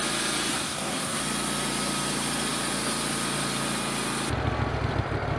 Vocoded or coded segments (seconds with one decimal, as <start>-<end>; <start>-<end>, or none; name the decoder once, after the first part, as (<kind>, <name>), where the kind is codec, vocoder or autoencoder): 0.5-1.2 (codec, SNAC)